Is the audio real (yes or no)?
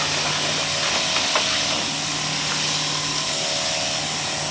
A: yes